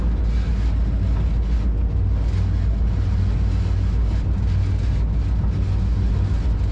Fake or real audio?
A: real